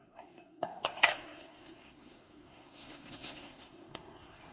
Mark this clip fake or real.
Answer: fake